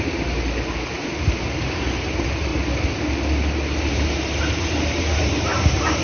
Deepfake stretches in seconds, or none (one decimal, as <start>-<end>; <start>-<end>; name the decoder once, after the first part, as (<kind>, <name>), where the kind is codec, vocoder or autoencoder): 0.0-2.5 (vocoder, BigVGAN v2); 3.9-6.0

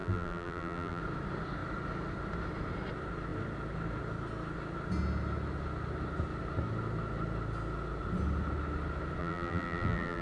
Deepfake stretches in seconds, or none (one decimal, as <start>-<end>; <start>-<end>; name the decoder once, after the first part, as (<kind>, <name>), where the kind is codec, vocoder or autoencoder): 0.0-1.0 (vocoder, BigVGAN v2); 9.2-10.2

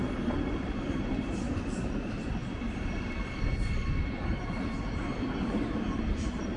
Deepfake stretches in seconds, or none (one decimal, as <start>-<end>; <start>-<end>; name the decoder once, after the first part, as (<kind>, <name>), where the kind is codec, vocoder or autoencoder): 0.0-2.4 (vocoder, BigVGAN v2); 3.5-6.6